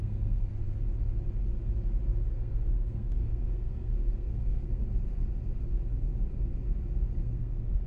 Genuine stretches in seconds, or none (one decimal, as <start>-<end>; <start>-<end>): 0.5-2.3; 4.8-7.2